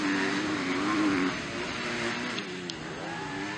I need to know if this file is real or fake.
real